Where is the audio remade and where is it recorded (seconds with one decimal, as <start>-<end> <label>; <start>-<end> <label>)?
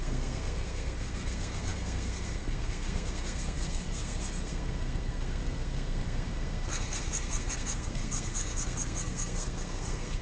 0.0-10.2 remade